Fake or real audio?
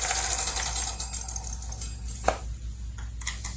real